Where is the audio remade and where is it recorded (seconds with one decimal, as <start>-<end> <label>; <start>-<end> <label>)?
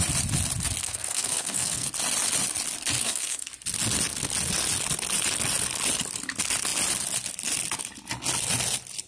0.0-0.8 recorded; 0.8-1.9 remade; 1.9-3.0 recorded; 3.0-3.5 remade; 3.5-9.1 recorded